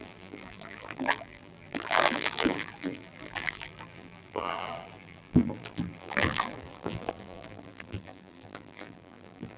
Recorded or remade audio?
remade